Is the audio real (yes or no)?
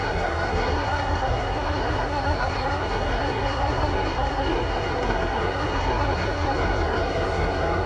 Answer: no